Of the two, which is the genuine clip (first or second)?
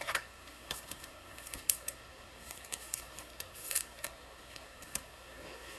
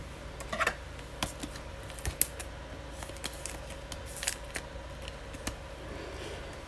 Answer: second